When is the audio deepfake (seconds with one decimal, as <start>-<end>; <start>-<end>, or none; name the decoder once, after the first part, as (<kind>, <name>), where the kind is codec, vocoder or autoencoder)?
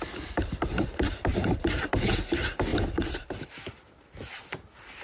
1.3-2.1 (vocoder, BigVGAN v2); 2.7-3.5